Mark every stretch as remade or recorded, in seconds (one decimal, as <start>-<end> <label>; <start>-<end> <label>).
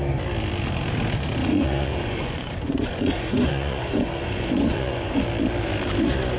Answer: 0.0-1.4 recorded; 1.4-5.2 remade; 5.2-6.4 recorded